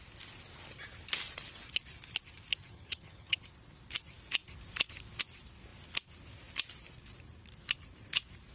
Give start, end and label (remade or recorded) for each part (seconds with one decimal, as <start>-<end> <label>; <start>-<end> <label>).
0.0-2.7 recorded; 2.7-3.4 remade; 3.4-8.5 recorded